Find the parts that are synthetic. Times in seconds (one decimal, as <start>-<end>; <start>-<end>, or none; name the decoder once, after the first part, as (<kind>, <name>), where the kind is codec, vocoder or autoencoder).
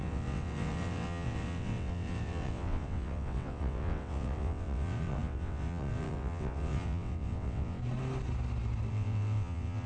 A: 0.0-7.8 (vocoder, WaveNeXt); 8.9-9.9